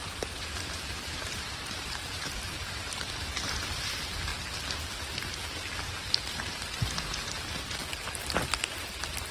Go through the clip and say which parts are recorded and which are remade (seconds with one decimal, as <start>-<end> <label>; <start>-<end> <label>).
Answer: 0.0-3.1 remade; 3.1-9.3 recorded